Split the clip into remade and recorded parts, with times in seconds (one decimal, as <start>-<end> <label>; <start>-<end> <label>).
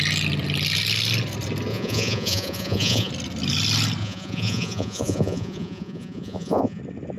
0.0-1.7 recorded; 1.7-3.1 remade; 3.1-4.0 recorded; 4.0-6.8 remade; 6.8-7.2 recorded